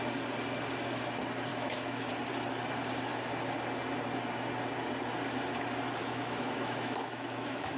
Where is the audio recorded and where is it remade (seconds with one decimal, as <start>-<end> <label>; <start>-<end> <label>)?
0.0-1.5 recorded; 1.5-2.1 remade; 2.1-6.0 recorded; 6.0-7.8 remade